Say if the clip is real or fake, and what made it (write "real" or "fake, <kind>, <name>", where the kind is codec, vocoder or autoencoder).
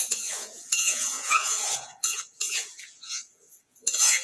fake, vocoder, Vocos